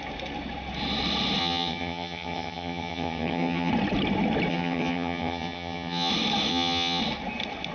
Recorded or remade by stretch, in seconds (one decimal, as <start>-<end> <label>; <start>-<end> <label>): 0.0-1.4 recorded; 1.4-3.7 remade; 3.7-4.5 recorded; 4.5-6.1 remade; 6.1-6.5 recorded; 6.5-7.0 remade; 7.0-7.7 recorded